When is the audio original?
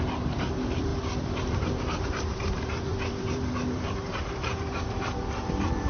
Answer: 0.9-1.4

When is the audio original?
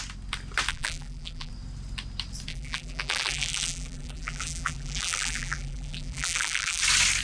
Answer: 0.0-0.7; 1.5-2.5; 6.8-7.2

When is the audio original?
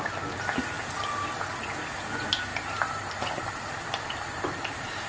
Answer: 0.0-2.5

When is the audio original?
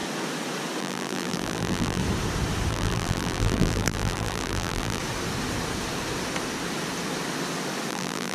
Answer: 0.0-0.8; 2.0-2.7; 5.0-7.9